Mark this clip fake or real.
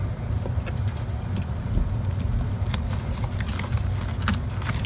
real